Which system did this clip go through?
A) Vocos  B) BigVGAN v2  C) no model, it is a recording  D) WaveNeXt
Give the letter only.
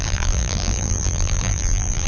B